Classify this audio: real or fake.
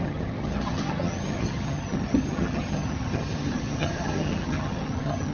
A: fake